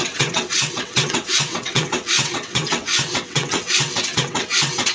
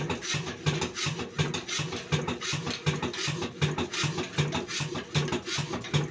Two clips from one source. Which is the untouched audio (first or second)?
second